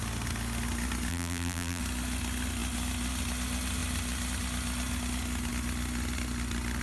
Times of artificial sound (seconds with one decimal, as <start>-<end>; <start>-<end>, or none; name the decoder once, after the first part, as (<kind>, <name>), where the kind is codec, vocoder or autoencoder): 1.1-1.8 (vocoder, BigVGAN v2)